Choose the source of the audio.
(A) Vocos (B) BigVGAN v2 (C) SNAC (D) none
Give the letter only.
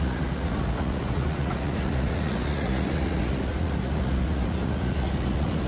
A